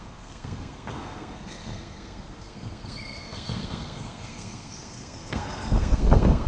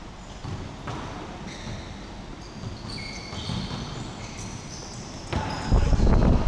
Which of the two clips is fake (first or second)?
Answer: first